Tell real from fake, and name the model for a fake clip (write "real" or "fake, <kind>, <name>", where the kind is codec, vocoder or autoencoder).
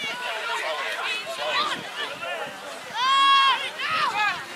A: real